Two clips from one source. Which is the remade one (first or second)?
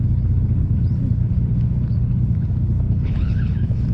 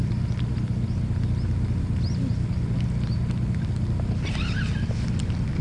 first